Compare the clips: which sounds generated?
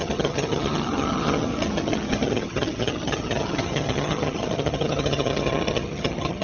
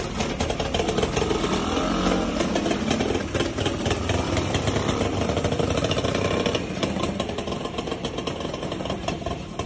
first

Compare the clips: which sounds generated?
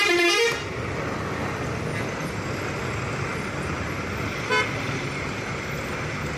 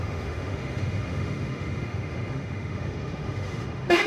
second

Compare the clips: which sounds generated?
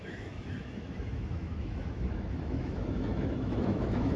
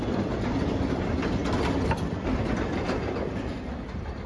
first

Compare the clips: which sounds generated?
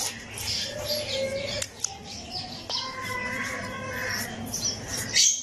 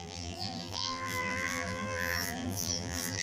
second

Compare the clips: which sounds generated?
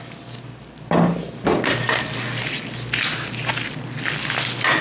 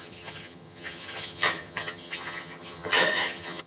second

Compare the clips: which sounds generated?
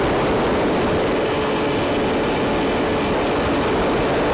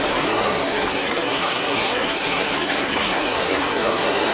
second